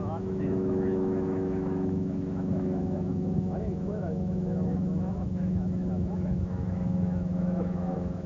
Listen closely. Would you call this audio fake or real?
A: fake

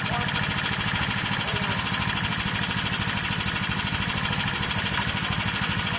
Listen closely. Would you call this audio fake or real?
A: real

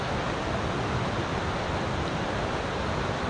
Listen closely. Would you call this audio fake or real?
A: real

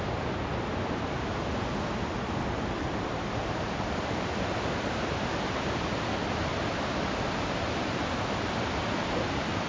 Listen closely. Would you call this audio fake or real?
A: real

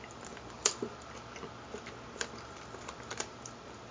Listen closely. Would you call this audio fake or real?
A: real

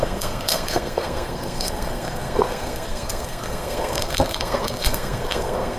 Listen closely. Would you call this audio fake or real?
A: fake